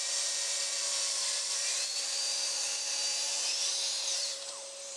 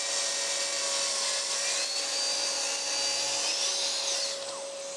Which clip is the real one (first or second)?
second